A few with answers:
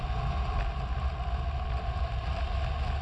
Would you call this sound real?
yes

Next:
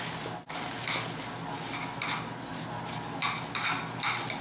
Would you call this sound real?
yes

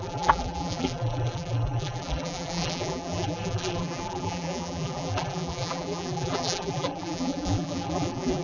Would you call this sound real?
no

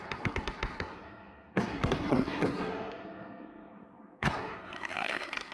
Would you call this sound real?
no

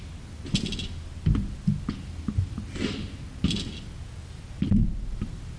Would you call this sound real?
yes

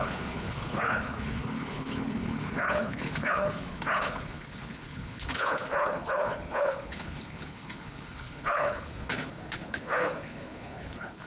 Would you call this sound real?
no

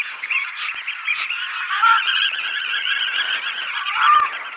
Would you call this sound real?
no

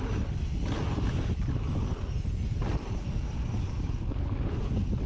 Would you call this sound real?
yes